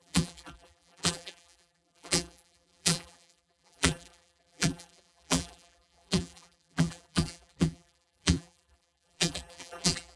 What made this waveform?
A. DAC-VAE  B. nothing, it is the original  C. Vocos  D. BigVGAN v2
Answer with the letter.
D